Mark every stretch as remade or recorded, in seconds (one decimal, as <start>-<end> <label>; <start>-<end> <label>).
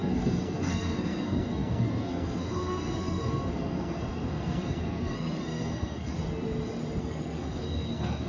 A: 0.0-6.1 remade; 6.1-7.0 recorded; 7.0-8.3 remade